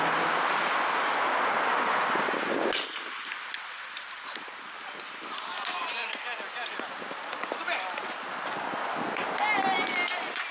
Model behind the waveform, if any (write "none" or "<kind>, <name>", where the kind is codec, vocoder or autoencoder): none